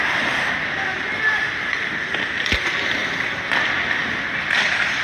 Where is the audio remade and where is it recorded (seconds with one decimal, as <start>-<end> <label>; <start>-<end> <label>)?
0.0-0.9 recorded; 0.9-1.7 remade; 1.7-5.0 recorded